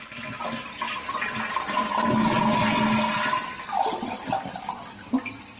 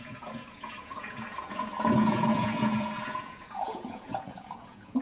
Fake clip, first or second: second